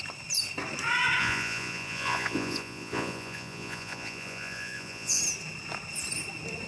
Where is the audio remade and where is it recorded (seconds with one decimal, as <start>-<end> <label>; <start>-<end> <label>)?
0.0-1.2 recorded; 1.2-5.2 remade; 5.2-6.7 recorded